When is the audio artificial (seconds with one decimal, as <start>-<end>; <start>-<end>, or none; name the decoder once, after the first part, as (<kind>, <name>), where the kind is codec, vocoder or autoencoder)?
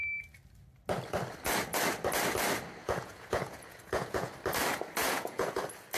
2.8-4.3 (vocoder, Vocos); 5.0-5.6